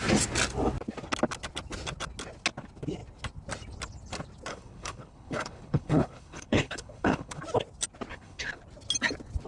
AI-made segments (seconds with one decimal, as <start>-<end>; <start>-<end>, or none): 4.5-7.4; 8.1-8.6